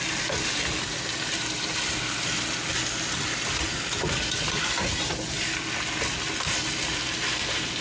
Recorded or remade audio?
recorded